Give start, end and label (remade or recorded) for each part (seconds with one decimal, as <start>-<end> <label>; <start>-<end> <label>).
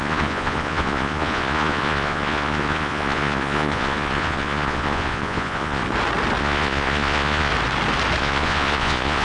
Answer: 0.0-5.8 remade; 5.8-6.4 recorded; 6.4-7.5 remade; 7.5-8.2 recorded; 8.2-9.2 remade